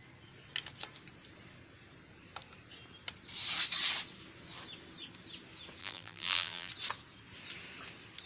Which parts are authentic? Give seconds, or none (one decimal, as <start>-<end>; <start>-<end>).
0.0-5.8; 6.7-8.3